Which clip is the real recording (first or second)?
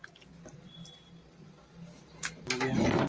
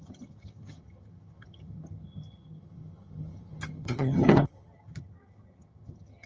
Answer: first